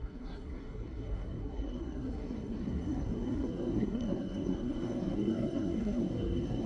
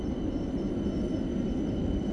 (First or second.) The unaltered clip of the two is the second